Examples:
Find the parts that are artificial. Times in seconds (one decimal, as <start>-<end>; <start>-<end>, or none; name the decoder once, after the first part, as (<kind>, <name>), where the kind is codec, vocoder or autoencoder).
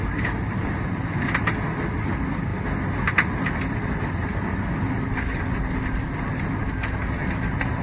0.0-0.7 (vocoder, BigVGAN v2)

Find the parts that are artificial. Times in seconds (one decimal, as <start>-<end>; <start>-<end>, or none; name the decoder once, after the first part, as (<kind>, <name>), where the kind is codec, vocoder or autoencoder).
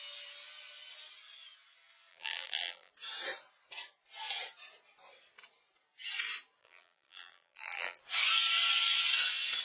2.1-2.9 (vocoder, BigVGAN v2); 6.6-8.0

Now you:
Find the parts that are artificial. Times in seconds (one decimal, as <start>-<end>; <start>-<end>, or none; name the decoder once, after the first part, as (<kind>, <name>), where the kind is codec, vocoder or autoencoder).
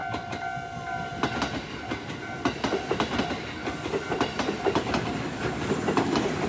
none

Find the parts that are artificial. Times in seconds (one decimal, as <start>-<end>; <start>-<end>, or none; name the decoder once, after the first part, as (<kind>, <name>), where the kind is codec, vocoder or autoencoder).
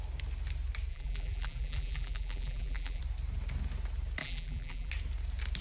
0.9-3.0 (vocoder, BigVGAN v2); 4.2-4.9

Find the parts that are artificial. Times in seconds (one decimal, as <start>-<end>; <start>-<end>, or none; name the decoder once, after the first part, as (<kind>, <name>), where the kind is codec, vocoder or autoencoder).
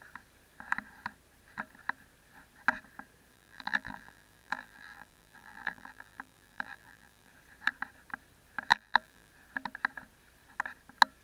3.3-7.3 (vocoder, BigVGAN v2); 8.7-9.3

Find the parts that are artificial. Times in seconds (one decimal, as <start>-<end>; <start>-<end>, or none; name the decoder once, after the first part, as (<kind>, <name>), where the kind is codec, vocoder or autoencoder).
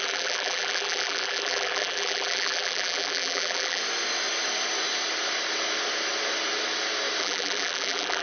0.0-3.8 (vocoder, BigVGAN v2); 7.2-8.2